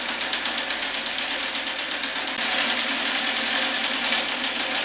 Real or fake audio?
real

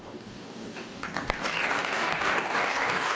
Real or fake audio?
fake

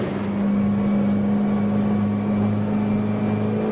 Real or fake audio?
real